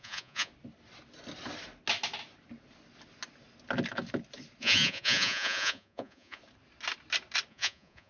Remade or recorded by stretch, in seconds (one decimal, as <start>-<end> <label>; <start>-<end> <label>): 0.0-0.5 remade; 0.5-4.6 recorded; 4.6-6.4 remade; 6.4-7.5 recorded; 7.5-8.1 remade